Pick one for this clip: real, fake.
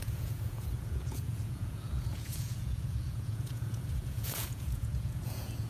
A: fake